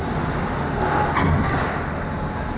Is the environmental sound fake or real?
real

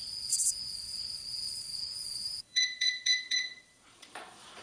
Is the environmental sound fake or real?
fake